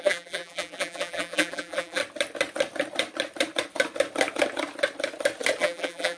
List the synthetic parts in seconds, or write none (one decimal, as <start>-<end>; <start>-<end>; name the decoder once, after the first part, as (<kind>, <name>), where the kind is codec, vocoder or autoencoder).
0.0-2.0 (vocoder, BigVGAN v2); 5.6-6.2